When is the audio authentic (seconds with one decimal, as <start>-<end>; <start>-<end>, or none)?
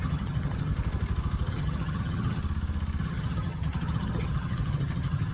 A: 0.7-1.5; 2.4-3.0